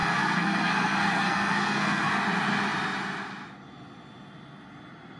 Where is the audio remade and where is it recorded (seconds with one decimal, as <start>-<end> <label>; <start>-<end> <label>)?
0.0-2.1 remade; 2.1-5.2 recorded